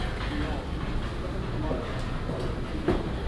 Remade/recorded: recorded